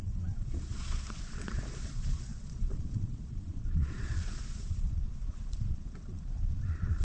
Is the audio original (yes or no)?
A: no